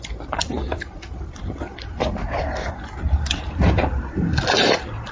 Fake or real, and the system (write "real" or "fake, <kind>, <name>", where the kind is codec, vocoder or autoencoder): real